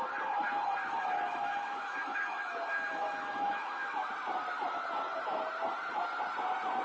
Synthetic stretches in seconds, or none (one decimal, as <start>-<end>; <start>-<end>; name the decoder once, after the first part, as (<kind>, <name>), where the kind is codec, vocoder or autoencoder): 0.8-4.1 (autoencoder, DAC-VAE)